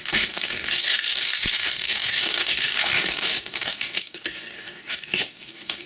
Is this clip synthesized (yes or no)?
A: yes